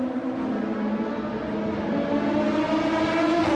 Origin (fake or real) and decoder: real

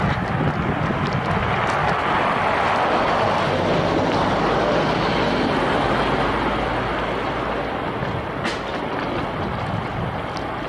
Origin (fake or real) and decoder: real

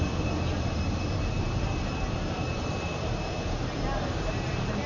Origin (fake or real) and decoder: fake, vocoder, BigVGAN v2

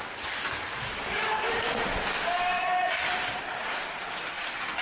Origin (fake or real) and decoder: real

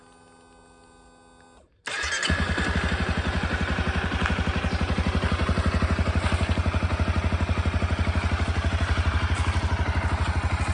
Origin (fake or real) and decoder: real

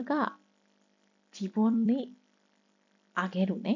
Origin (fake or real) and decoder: fake, vocoder, BigVGAN v2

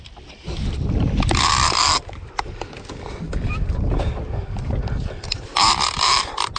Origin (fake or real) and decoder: real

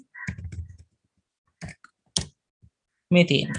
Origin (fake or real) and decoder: real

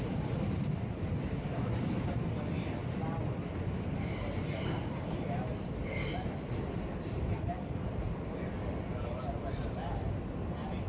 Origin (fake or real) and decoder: real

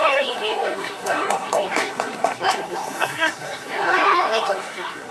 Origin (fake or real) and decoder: fake, codec, SNAC